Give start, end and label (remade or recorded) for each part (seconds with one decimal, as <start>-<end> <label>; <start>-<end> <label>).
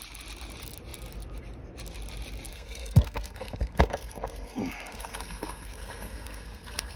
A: 0.0-2.5 recorded; 2.5-7.0 remade